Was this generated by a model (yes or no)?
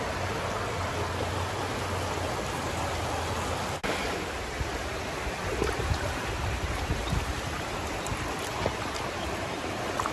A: no